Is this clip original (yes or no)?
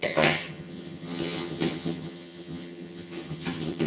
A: no